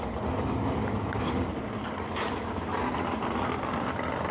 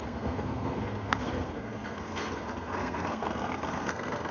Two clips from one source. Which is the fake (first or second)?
second